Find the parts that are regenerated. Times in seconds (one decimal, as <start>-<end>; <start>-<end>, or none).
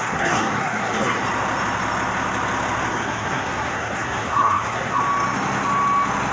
0.0-1.2; 2.9-5.0